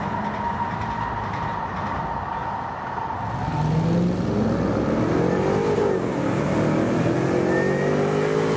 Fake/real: real